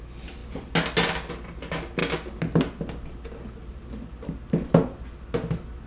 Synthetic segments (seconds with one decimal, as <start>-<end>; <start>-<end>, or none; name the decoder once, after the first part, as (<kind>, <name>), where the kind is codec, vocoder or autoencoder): none